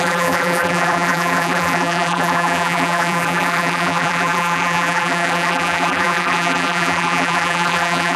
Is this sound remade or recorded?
remade